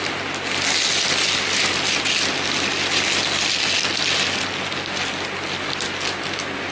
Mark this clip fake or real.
real